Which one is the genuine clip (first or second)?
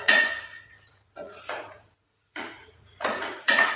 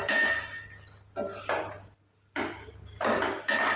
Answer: second